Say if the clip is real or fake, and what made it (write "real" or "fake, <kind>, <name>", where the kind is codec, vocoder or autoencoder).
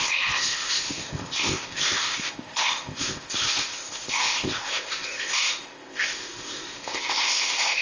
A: fake, codec, ZipCodec